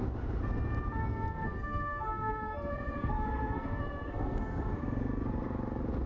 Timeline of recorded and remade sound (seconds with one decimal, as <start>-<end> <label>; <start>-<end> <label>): 0.0-1.1 recorded; 1.1-4.6 remade; 4.6-6.1 recorded